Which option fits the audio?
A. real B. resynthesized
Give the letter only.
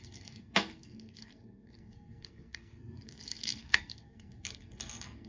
B